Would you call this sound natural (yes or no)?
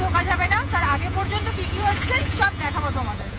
no